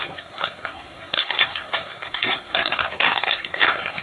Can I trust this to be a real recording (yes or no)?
no